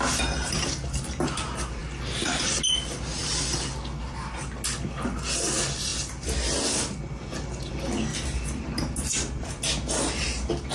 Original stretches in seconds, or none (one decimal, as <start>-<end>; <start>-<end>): 0.0-10.7